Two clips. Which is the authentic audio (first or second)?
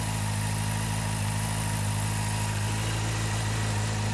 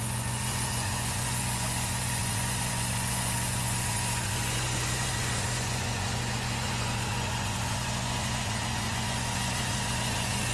first